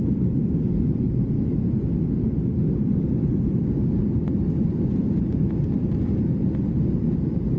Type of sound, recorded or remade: recorded